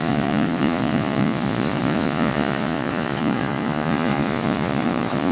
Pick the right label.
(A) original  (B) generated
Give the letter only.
B